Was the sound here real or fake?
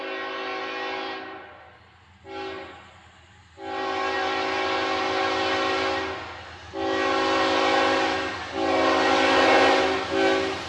real